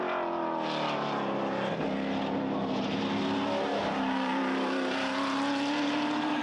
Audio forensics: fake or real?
real